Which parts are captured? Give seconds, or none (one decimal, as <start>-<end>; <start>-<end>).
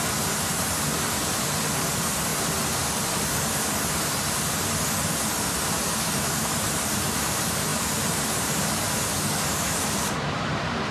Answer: 0.0-1.3; 2.3-6.1